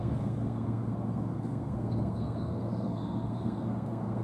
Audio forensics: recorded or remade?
remade